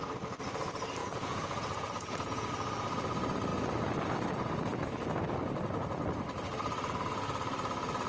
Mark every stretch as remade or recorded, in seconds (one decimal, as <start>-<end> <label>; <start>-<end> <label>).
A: 0.0-1.0 recorded; 1.0-2.5 remade; 2.5-8.1 recorded